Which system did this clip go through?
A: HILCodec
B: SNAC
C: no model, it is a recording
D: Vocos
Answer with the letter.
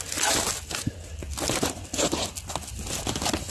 C